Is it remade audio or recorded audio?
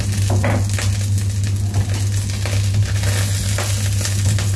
recorded